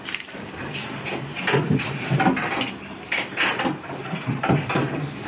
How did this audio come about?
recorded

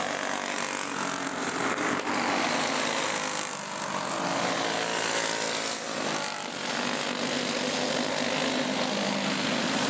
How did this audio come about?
recorded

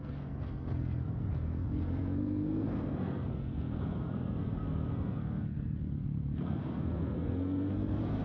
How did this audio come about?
remade